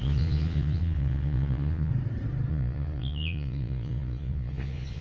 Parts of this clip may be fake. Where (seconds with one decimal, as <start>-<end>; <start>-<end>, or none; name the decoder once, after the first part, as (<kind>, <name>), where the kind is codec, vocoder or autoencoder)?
0.0-1.9 (vocoder, Vocos); 2.5-5.0